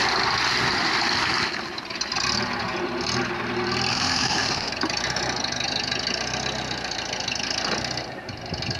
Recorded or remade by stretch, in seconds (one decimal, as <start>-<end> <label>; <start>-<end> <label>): 0.0-3.9 recorded; 3.9-4.7 remade; 4.7-8.8 recorded